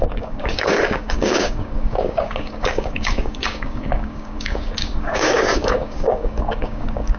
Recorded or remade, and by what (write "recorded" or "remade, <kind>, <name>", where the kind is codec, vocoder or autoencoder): remade, codec, DAC